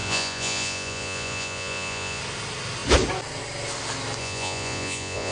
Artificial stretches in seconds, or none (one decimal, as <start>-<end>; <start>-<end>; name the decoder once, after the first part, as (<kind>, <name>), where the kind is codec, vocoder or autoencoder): 0.0-2.2 (vocoder, Vocos); 4.2-5.3